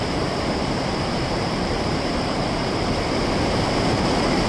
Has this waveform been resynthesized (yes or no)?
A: yes